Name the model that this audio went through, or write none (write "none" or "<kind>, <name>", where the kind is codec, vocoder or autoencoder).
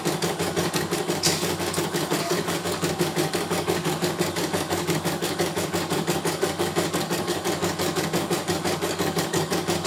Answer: codec, DAC